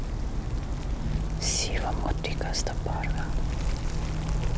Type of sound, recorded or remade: recorded